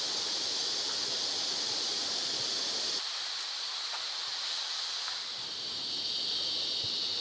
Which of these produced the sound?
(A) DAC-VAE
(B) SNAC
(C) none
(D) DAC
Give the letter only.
C